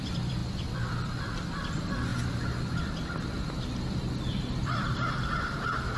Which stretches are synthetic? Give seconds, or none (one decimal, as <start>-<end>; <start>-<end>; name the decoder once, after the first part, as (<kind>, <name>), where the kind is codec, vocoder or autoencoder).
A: 0.0-0.4 (vocoder, BigVGAN v2); 0.9-2.1; 4.5-6.0